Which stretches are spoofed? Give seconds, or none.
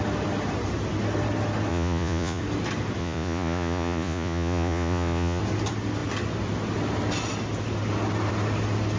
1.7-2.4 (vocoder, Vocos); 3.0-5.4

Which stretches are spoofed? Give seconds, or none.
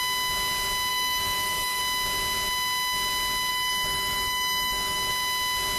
0.9-1.8 (autoencoder, DAC-VAE); 3.5-5.1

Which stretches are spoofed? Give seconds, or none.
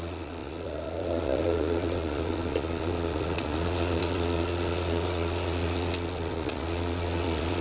0.0-7.6 (vocoder, Vocos)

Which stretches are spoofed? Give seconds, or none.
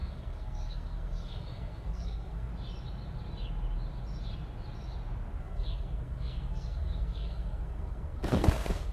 0.0-2.5 (codec, SNAC); 5.4-8.9